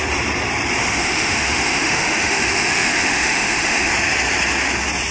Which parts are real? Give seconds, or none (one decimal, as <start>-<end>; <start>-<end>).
0.0-0.8; 3.9-5.1

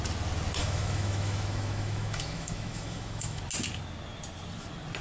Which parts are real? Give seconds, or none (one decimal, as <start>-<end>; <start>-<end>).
0.0-0.6; 3.4-5.0